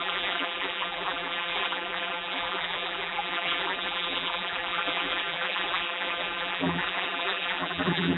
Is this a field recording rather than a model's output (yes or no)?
no